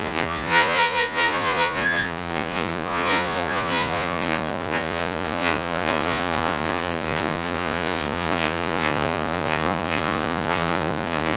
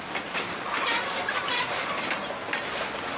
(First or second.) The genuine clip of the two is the second